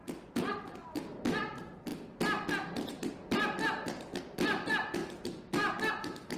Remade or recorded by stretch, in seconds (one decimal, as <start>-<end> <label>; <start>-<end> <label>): 0.0-6.4 recorded